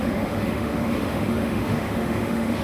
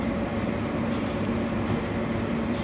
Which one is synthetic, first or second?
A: first